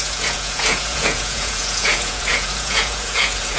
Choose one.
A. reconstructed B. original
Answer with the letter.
A